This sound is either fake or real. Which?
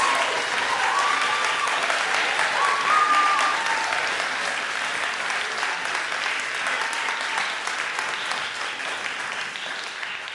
real